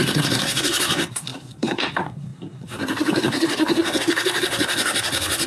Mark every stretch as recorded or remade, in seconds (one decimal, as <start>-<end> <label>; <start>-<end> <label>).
0.0-5.5 remade